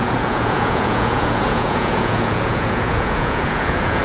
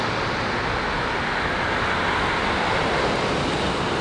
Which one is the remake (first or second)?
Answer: first